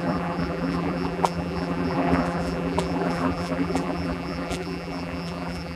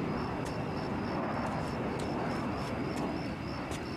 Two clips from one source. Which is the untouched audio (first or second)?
second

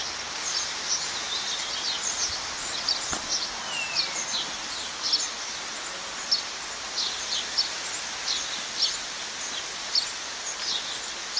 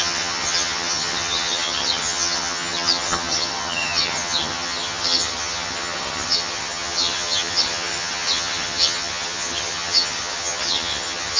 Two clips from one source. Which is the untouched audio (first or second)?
first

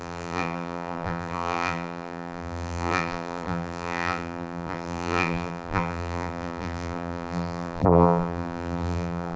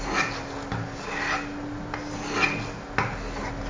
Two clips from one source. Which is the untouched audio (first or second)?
second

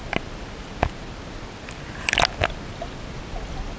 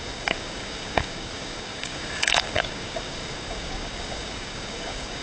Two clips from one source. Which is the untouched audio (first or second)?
first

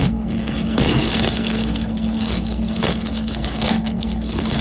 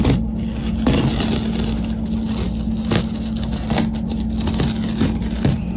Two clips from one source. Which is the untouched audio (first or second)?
second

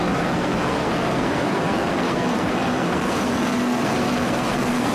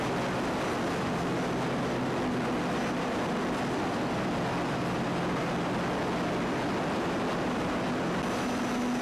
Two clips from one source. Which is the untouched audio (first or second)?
second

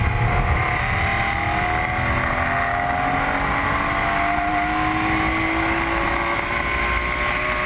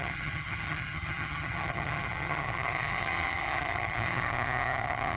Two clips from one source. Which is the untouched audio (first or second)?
first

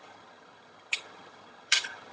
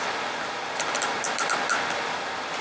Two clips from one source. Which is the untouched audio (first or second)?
second